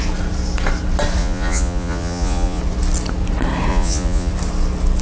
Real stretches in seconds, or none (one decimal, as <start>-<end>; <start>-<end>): 0.0-1.2; 2.6-3.7; 4.3-5.0